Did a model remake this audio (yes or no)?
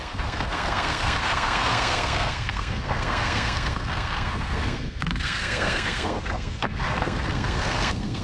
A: yes